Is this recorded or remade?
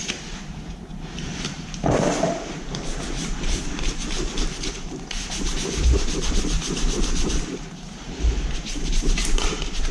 remade